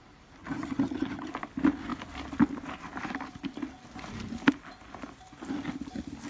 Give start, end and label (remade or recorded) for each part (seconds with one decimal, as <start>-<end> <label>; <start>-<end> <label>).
0.0-0.4 recorded; 0.4-1.3 remade; 1.3-6.3 recorded